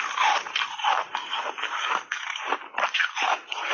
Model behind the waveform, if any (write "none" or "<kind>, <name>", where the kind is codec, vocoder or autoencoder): none